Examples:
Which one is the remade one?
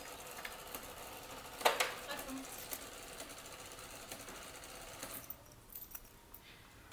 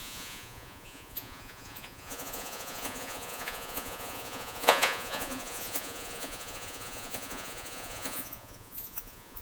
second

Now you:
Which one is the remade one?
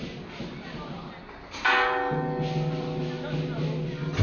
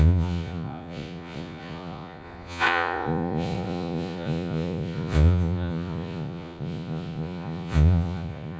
second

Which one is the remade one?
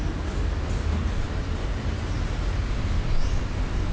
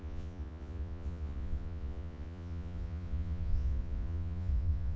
second